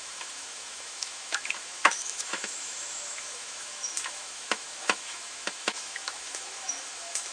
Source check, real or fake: fake